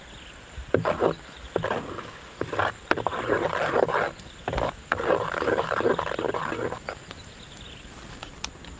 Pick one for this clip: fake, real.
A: real